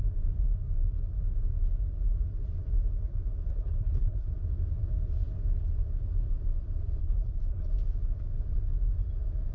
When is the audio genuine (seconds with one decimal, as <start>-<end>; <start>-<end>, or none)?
0.0-3.5; 4.3-7.0; 7.7-9.5